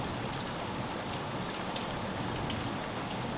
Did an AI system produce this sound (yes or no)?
no